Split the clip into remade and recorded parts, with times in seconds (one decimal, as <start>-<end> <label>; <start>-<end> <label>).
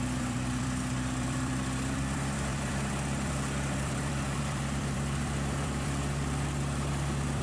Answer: 0.0-7.4 remade